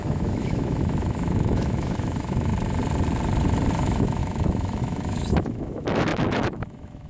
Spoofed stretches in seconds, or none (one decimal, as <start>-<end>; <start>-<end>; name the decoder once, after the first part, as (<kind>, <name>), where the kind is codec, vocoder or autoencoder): 0.0-2.5 (autoencoder, DAC-VAE); 3.7-7.1